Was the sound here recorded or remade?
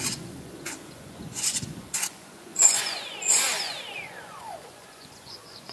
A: remade